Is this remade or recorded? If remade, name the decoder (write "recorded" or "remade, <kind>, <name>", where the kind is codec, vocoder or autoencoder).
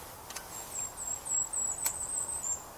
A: recorded